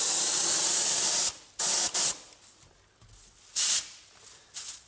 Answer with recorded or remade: recorded